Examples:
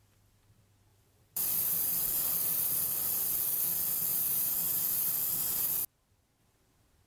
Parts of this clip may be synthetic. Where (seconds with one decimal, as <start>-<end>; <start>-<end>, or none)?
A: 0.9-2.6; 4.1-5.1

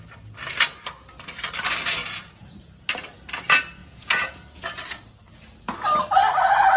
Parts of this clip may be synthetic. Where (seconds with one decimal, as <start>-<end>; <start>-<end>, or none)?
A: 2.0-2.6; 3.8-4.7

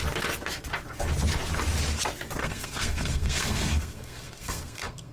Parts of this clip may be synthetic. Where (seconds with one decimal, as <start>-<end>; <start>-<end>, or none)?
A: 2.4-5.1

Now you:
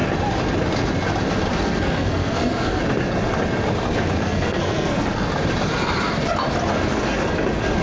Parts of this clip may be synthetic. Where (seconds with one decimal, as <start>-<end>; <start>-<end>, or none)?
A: 1.5-2.8; 4.2-5.3